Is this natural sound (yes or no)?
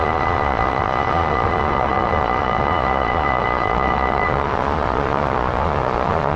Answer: no